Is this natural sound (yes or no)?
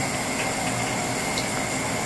yes